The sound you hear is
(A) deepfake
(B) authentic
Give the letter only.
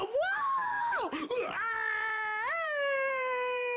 A